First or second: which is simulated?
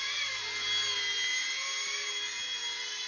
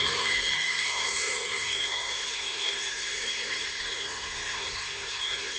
second